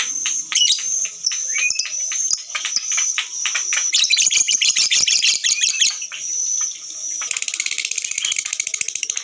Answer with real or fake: fake